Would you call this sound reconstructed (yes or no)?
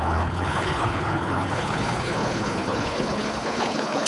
yes